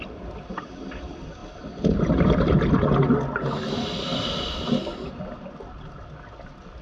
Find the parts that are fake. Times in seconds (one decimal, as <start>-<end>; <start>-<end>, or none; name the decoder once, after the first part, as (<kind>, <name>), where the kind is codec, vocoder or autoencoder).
none